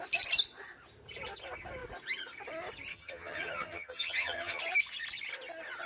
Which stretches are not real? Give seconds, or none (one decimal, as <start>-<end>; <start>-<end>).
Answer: 2.9-4.6